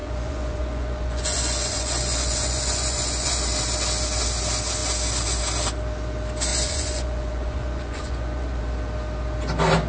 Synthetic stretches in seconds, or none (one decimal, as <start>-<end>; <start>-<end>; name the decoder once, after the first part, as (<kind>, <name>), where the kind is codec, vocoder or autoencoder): 0.0-3.4 (vocoder, Vocos); 6.5-8.6